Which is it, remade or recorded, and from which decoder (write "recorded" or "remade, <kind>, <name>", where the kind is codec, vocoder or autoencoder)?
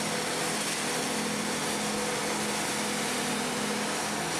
recorded